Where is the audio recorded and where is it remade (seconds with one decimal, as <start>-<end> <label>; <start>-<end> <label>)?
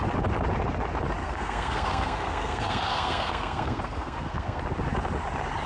0.0-1.2 recorded; 1.2-4.6 remade; 4.6-5.7 recorded